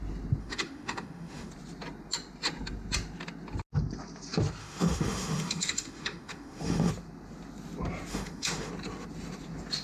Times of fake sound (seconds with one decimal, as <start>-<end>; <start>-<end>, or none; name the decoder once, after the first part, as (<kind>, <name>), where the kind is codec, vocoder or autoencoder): 0.4-1.5 (autoencoder, DAC-VAE); 4.6-6.9; 8.1-8.7